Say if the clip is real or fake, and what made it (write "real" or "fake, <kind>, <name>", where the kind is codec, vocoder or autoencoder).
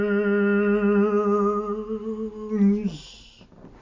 real